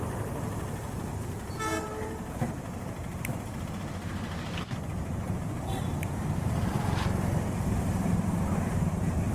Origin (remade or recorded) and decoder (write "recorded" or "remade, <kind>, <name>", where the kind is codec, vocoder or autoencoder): remade, vocoder, BigVGAN v2